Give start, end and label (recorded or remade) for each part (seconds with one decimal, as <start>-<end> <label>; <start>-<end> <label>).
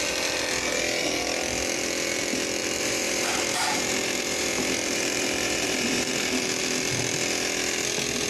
0.0-2.6 recorded; 2.6-6.1 remade; 6.1-8.3 recorded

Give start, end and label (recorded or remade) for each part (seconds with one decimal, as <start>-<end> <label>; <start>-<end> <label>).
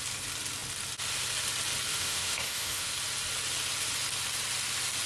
0.0-1.9 recorded; 1.9-2.9 remade; 2.9-5.1 recorded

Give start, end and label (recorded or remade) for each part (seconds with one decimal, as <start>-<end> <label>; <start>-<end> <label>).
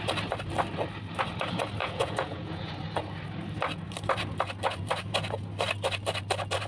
0.0-1.8 recorded; 1.8-2.7 remade; 2.7-6.7 recorded